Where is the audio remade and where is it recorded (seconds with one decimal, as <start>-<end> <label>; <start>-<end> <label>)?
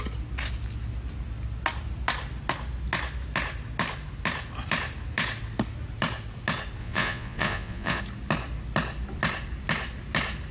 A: 0.0-6.8 recorded; 6.8-8.0 remade; 8.0-10.5 recorded